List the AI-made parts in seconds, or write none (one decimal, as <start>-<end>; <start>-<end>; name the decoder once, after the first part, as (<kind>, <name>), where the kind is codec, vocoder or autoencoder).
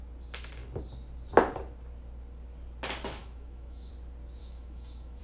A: 3.2-3.9 (autoencoder, DAC-VAE); 4.4-5.2